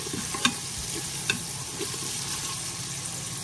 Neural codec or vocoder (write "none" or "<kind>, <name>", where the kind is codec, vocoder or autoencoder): none